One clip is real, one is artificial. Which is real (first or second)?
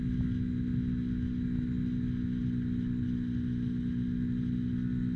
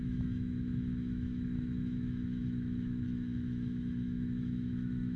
first